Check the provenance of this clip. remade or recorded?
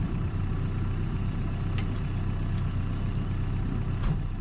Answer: remade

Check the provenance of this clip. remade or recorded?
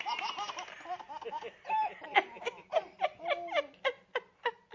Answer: recorded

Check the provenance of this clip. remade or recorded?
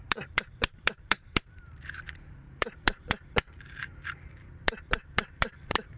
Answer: remade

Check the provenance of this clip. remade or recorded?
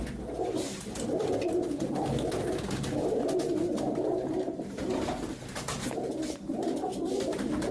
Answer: recorded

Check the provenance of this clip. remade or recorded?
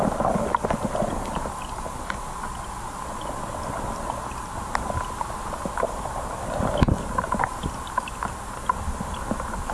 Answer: recorded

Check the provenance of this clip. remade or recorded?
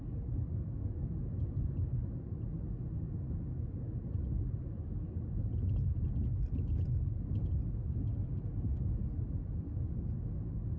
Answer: recorded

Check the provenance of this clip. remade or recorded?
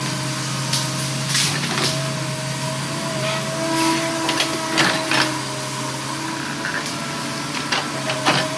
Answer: recorded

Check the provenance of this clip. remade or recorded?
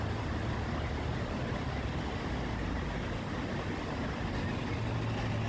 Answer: recorded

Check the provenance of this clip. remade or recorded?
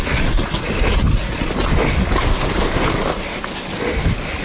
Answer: recorded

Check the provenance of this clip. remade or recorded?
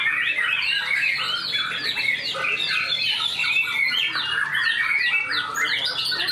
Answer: recorded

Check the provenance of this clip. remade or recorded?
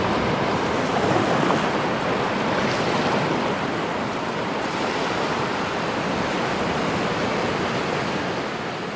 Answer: recorded